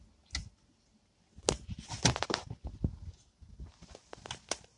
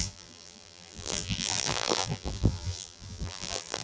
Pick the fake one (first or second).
second